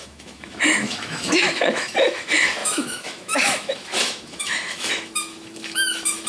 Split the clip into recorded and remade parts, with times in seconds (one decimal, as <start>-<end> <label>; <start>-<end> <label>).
0.0-6.3 remade